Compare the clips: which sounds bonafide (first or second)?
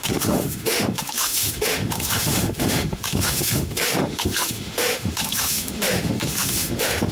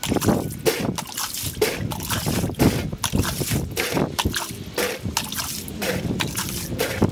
second